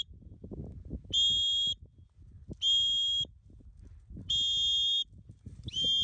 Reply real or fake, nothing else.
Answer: real